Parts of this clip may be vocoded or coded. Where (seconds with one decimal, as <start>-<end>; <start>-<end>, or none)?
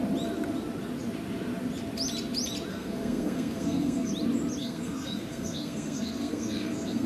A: 2.7-4.1; 4.6-7.1